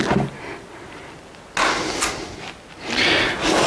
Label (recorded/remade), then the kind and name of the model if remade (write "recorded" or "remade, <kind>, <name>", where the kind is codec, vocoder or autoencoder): recorded